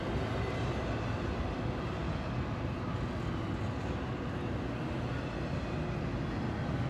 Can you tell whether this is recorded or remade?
recorded